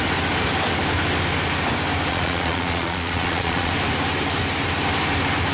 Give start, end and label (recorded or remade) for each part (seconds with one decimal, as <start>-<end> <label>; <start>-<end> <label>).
0.0-2.1 recorded; 2.1-3.7 remade; 3.7-5.5 recorded